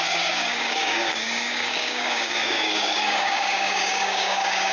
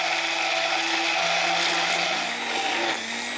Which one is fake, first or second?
first